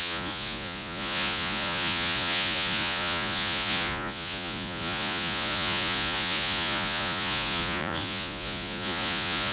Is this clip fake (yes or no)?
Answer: yes